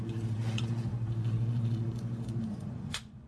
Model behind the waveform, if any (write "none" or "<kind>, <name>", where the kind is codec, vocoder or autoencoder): vocoder, Vocos